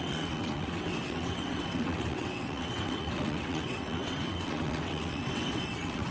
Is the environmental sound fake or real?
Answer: fake